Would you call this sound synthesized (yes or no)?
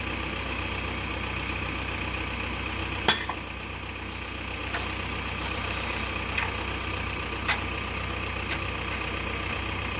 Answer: no